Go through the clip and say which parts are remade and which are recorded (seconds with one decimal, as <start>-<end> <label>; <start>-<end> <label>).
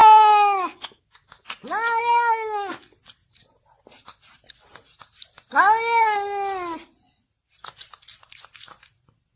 0.0-1.4 remade; 1.4-2.0 recorded; 2.0-2.8 remade; 2.8-9.3 recorded